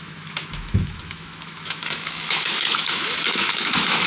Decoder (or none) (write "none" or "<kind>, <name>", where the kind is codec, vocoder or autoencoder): autoencoder, DAC-VAE